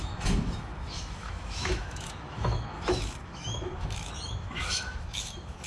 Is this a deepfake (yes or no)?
yes